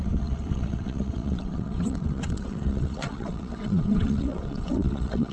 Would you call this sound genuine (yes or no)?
no